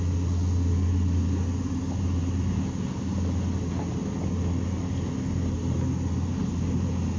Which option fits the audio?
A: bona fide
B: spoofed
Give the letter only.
A